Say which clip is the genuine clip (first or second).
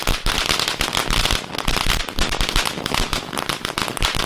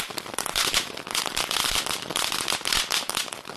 first